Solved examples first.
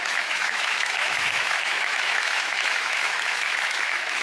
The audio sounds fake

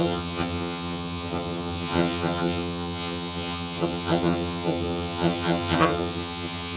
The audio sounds fake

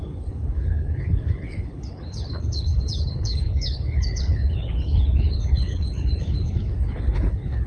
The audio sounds fake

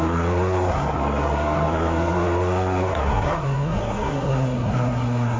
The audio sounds fake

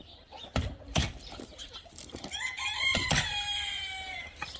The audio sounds fake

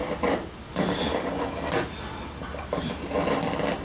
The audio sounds real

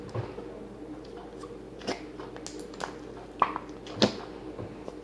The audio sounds real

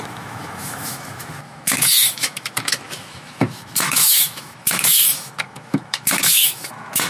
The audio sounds fake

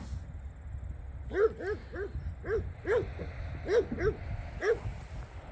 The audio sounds real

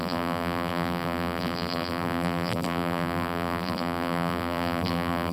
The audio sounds fake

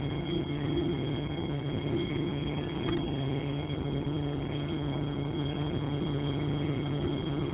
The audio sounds fake